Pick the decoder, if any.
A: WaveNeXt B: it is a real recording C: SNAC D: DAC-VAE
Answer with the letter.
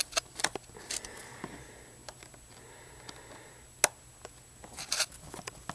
B